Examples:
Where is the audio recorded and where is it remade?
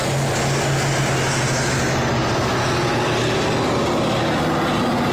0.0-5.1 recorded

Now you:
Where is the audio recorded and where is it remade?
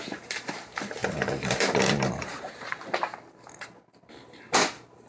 0.0-1.0 recorded; 1.0-2.5 remade; 2.5-5.1 recorded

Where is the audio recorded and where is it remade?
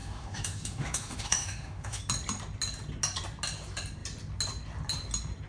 0.0-2.0 remade; 2.0-5.5 recorded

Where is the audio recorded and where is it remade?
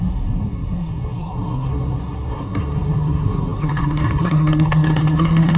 0.0-5.6 remade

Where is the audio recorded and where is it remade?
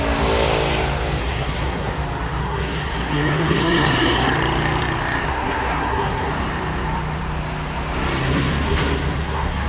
0.0-1.2 recorded; 1.2-1.9 remade; 1.9-2.4 recorded; 2.4-4.3 remade; 4.3-5.3 recorded; 5.3-6.3 remade; 6.3-8.2 recorded; 8.2-9.7 remade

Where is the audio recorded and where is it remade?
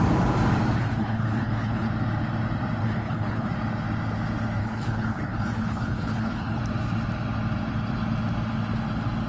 0.0-0.8 recorded; 0.8-1.9 remade; 1.9-2.8 recorded; 2.8-3.5 remade; 3.5-4.6 recorded; 4.6-6.6 remade; 6.6-9.3 recorded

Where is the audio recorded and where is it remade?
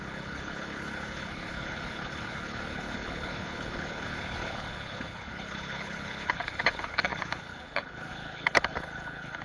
0.0-9.4 remade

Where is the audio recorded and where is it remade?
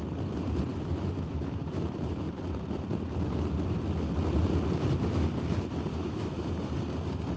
0.0-0.7 recorded; 0.7-2.4 remade; 2.4-5.9 recorded; 5.9-6.5 remade; 6.5-7.4 recorded